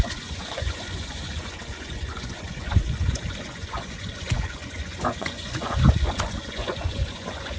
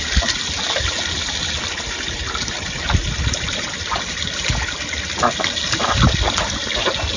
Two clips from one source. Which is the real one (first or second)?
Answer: second